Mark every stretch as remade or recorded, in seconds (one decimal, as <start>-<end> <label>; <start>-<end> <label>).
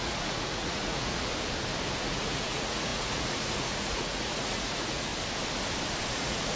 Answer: 0.0-1.3 remade; 1.3-2.0 recorded; 2.0-5.1 remade; 5.1-6.1 recorded; 6.1-6.6 remade